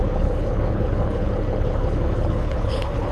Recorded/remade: remade